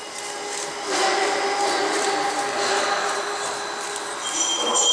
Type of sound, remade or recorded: recorded